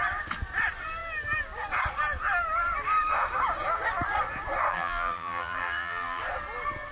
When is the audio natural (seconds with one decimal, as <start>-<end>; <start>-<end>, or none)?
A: 0.0-4.7; 6.2-6.9